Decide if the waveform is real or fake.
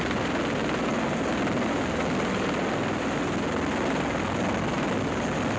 real